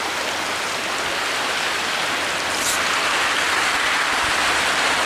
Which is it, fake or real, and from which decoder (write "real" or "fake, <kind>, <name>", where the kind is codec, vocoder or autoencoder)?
real